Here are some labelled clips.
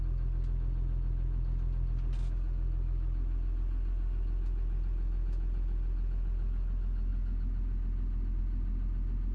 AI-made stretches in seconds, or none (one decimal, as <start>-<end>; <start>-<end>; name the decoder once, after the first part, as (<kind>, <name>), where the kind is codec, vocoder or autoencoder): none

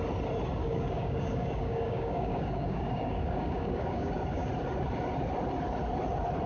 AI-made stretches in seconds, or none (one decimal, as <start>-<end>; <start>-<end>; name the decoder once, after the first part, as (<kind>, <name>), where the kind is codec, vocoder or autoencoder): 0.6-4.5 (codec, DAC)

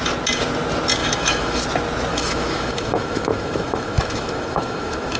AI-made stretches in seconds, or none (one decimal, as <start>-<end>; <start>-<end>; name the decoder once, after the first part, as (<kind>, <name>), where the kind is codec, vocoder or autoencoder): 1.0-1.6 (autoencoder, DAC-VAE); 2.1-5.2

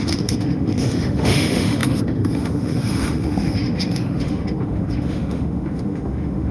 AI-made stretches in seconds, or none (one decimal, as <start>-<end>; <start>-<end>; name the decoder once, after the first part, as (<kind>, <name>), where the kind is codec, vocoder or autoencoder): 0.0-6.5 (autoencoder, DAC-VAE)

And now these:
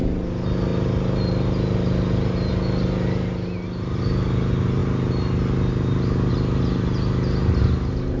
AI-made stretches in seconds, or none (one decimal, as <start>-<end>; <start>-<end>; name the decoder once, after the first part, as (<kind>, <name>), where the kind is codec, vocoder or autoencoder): none

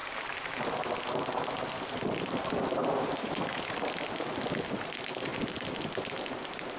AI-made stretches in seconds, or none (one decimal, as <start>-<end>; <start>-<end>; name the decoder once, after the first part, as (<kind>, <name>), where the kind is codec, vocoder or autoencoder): 0.0-0.6 (vocoder, BigVGAN v2); 2.8-3.5